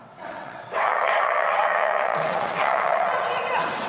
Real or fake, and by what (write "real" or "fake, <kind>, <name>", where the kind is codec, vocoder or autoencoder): fake, vocoder, WaveNeXt